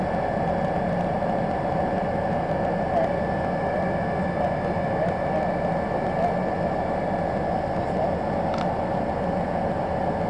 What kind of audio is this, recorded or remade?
recorded